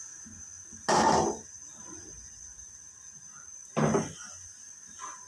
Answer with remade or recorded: recorded